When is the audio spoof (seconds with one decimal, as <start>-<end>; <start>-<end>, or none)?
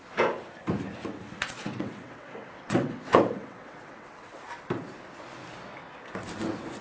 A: 1.1-4.4